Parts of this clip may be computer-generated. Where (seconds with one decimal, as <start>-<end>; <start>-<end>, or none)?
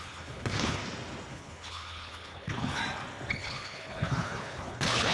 0.0-0.8; 1.3-2.8; 3.3-5.1